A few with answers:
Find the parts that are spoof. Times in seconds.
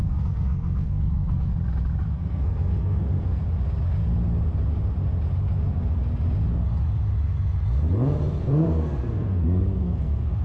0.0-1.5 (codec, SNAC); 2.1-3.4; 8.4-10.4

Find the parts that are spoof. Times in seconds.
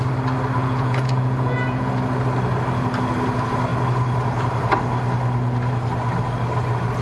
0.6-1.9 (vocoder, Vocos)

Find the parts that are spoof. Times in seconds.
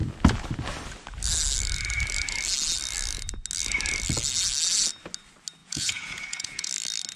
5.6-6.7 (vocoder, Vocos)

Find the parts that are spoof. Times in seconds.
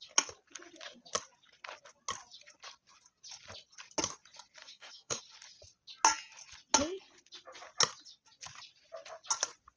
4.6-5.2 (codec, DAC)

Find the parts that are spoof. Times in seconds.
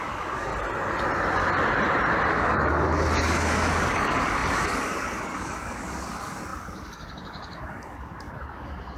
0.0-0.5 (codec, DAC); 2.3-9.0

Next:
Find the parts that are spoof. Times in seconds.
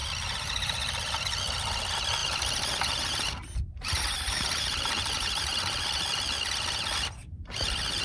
0.0-1.2 (vocoder, BigVGAN v2); 2.2-6.0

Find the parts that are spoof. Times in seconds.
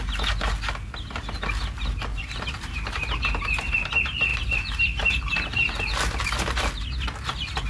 2.1-3.9 (vocoder, BigVGAN v2); 4.3-5.7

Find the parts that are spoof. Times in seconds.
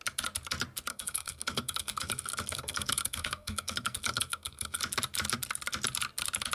0.9-4.8 (codec, SNAC)